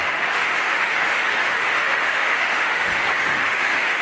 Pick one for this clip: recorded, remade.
remade